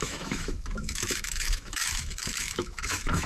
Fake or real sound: fake